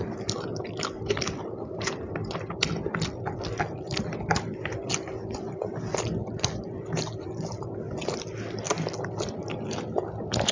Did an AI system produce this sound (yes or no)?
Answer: yes